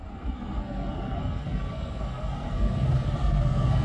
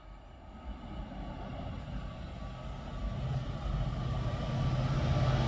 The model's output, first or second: first